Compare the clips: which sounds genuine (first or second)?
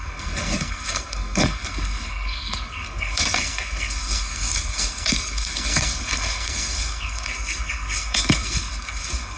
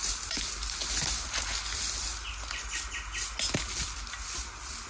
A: second